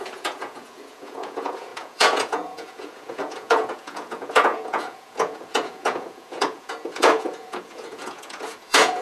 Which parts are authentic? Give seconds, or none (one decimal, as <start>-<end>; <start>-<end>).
none